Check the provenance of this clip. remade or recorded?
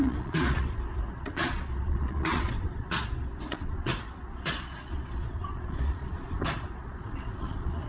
remade